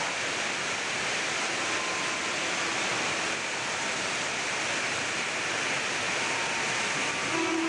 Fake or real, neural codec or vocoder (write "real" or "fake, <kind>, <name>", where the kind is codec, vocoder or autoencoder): real